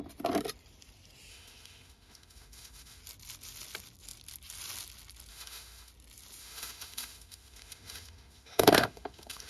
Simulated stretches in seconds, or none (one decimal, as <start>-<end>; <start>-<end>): 1.3-3.0; 5.3-5.9; 6.4-9.5